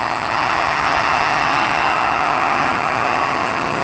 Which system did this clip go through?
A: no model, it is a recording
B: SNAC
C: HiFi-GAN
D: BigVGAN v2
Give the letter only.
C